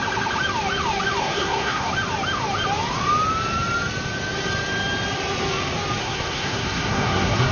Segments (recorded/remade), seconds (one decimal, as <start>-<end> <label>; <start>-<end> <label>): 0.0-1.2 recorded; 1.2-1.9 remade; 1.9-6.0 recorded; 6.0-7.5 remade